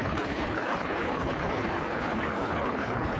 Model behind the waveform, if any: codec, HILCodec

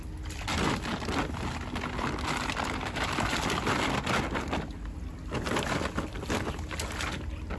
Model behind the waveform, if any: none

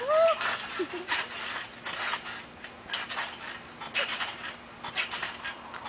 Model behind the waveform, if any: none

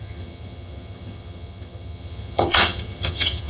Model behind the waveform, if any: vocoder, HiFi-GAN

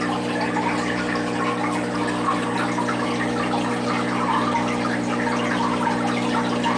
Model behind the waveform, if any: none